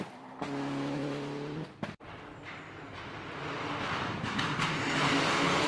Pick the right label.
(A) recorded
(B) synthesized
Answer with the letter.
A